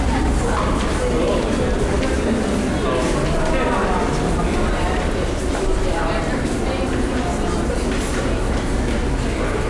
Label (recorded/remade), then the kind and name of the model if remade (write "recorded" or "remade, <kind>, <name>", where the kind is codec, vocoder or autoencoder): recorded